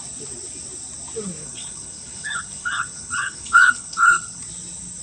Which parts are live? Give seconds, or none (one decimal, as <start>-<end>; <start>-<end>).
0.0-1.4; 4.4-5.0